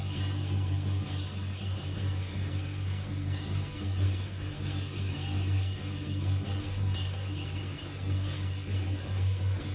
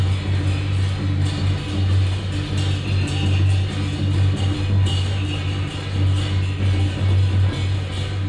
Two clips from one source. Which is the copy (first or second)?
first